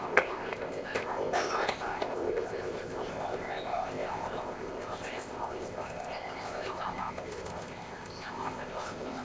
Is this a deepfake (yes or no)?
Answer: yes